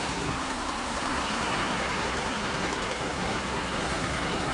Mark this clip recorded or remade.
remade